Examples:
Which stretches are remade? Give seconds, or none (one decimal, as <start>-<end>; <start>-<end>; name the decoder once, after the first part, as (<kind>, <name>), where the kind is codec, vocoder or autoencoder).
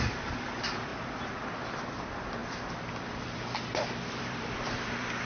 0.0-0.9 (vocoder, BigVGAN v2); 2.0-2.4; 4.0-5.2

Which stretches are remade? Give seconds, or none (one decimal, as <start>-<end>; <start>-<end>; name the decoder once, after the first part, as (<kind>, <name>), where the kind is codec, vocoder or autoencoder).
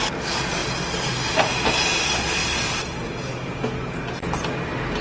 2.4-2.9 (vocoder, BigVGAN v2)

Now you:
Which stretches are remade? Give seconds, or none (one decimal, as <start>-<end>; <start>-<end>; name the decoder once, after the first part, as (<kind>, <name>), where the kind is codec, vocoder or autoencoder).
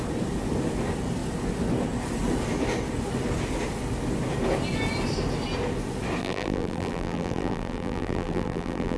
6.2-9.0 (vocoder, BigVGAN v2)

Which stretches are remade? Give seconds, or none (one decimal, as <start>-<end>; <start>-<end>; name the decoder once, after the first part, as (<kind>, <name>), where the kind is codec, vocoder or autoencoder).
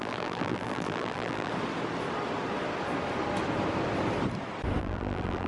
0.0-1.5 (vocoder, BigVGAN v2); 4.8-5.5